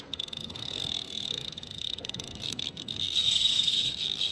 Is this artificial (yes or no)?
yes